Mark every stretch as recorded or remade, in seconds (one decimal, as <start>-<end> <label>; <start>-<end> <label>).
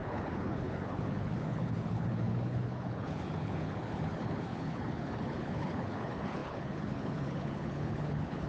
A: 0.0-8.5 remade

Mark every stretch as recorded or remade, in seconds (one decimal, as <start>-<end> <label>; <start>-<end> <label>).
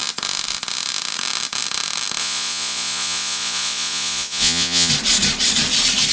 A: 0.0-2.2 recorded; 2.2-4.9 remade; 4.9-6.1 recorded